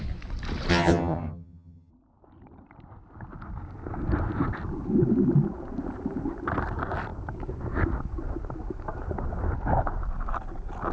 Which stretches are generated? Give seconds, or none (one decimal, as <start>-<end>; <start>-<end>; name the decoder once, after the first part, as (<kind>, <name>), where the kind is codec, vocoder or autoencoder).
0.7-1.9 (vocoder, HiFi-GAN)